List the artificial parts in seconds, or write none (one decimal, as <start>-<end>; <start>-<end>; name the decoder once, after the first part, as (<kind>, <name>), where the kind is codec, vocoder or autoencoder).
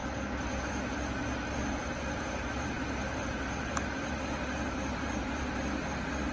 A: 1.8-5.6 (vocoder, BigVGAN v2)